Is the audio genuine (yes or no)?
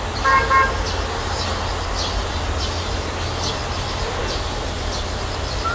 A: yes